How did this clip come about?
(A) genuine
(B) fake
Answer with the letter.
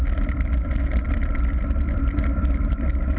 B